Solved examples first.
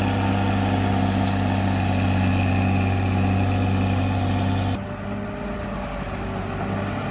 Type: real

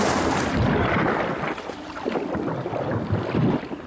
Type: real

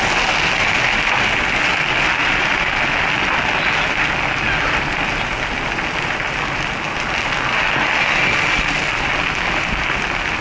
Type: real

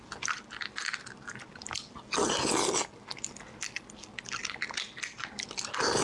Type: real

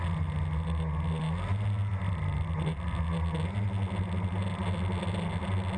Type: real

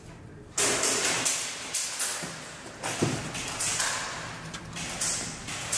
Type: real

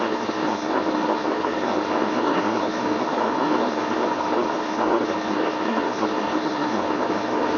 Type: fake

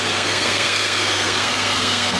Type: fake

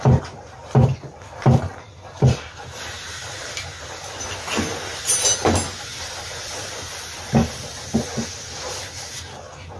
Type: real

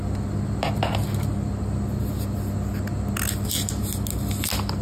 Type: real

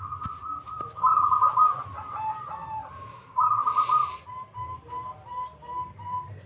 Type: real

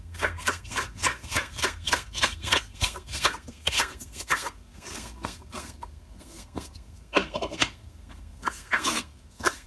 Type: fake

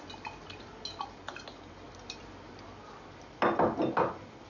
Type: real